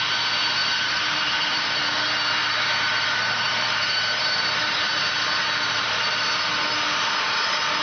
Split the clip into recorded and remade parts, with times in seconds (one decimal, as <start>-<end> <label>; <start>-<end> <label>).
0.0-0.6 recorded; 0.6-1.8 remade; 1.8-2.4 recorded; 2.4-6.2 remade; 6.2-7.8 recorded